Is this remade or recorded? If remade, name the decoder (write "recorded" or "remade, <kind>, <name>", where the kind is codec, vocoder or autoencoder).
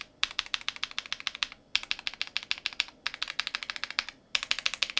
recorded